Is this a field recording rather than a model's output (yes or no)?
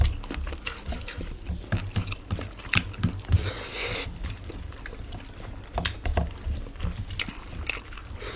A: yes